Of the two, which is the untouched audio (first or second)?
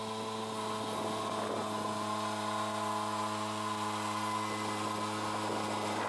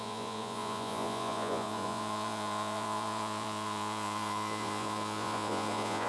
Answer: first